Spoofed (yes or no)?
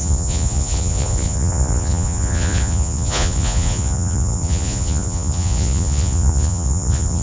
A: yes